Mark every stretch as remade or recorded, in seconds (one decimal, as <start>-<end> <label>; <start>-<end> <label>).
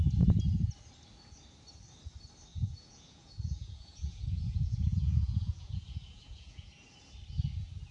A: 0.0-2.5 recorded; 2.5-6.7 remade; 6.7-7.9 recorded